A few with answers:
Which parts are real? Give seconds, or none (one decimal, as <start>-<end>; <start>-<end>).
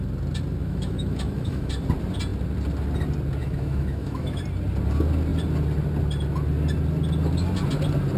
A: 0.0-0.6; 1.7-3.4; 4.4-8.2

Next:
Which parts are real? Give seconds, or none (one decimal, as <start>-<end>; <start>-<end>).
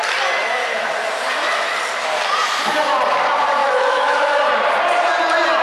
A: 0.0-3.6; 4.4-5.6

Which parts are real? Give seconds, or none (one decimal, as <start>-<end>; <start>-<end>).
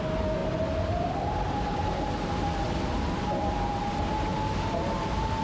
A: 0.0-5.4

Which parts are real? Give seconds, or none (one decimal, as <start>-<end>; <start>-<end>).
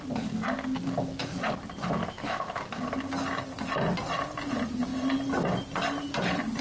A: 0.0-2.0; 2.5-6.6